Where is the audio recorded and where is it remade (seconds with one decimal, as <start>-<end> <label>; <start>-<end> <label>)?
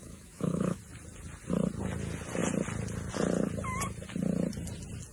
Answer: 0.0-0.8 remade; 0.8-5.1 recorded